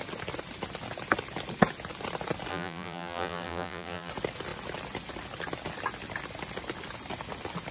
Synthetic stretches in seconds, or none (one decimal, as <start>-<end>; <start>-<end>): 2.5-4.1